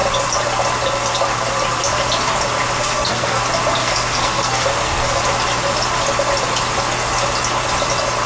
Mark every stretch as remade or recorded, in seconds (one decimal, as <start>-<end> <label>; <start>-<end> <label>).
0.0-2.8 recorded; 2.8-3.4 remade; 3.4-3.8 recorded; 3.8-5.2 remade; 5.2-8.3 recorded